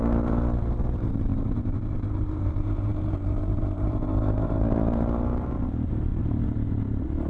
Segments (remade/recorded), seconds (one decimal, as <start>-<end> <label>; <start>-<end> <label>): 0.0-7.3 remade